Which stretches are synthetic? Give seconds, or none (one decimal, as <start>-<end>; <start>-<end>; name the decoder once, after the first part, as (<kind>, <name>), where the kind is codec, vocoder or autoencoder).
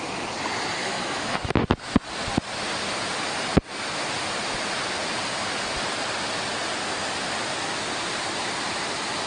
0.8-1.5 (autoencoder, DAC-VAE)